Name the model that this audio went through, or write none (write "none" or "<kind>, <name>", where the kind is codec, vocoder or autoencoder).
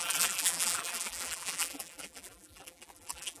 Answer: vocoder, BigVGAN v2